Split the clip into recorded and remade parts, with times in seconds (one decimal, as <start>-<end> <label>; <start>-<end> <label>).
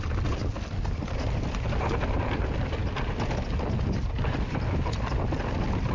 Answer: 0.0-5.9 recorded